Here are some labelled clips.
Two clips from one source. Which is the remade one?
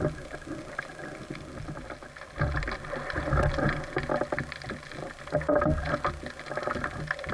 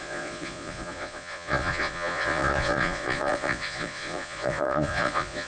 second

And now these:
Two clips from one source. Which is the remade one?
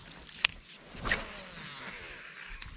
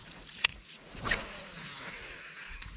second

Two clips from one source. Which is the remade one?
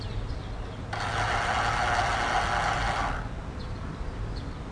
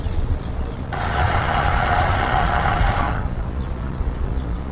second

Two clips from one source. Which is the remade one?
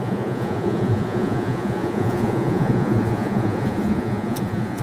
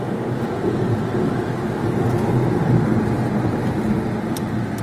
first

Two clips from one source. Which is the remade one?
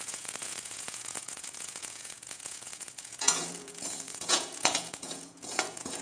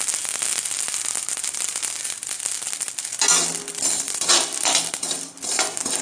first